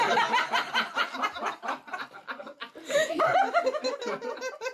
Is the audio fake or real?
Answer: real